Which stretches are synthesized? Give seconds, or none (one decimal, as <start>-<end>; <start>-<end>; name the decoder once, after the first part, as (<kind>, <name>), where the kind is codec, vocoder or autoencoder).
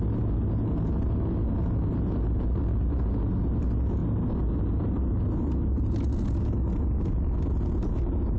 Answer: none